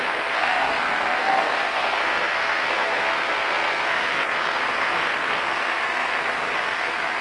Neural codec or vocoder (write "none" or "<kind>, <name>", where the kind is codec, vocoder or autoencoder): codec, SNAC